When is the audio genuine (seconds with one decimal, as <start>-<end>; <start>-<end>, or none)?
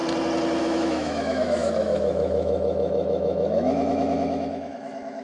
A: 0.0-0.6